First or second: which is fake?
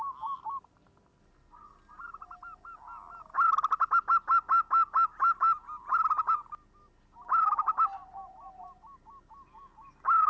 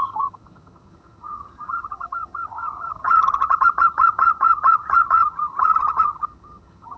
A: second